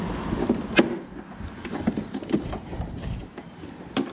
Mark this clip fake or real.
real